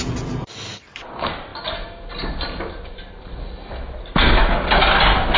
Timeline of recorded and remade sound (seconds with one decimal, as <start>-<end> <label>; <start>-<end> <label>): 0.0-5.4 recorded